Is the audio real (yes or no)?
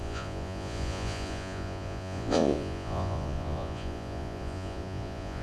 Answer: no